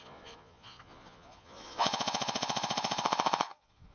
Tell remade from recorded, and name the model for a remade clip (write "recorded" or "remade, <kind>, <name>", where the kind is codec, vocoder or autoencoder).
remade, vocoder, Vocos